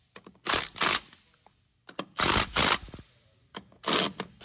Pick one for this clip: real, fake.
real